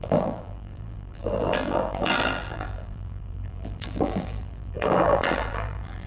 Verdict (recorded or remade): remade